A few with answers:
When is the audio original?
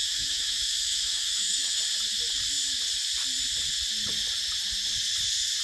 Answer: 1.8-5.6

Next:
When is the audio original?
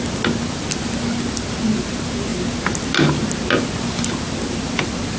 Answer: 0.0-5.2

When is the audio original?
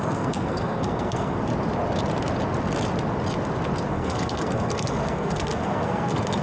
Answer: 1.5-3.9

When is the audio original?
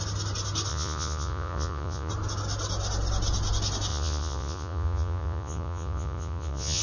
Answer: 0.0-0.7; 2.1-3.9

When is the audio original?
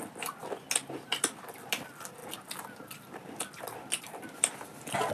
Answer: 0.0-2.2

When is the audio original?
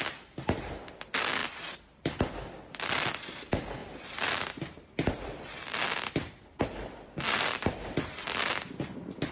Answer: 0.0-1.4; 3.1-3.8; 8.7-9.3